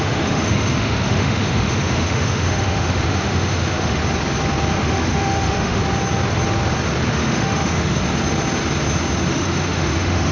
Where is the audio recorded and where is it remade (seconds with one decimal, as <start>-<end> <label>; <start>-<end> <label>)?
0.0-4.0 remade; 4.0-4.7 recorded; 4.7-5.8 remade; 5.8-7.1 recorded; 7.1-8.0 remade; 8.0-9.3 recorded; 9.3-10.3 remade